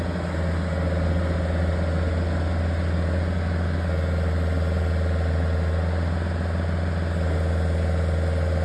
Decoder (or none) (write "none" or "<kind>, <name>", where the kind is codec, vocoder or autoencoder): none